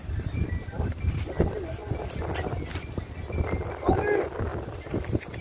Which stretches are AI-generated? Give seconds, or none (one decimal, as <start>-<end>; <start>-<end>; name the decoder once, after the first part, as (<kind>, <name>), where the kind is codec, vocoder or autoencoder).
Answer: none